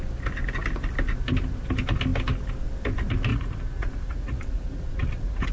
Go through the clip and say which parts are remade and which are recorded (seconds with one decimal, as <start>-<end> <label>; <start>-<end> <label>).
0.0-3.3 recorded; 3.3-5.5 remade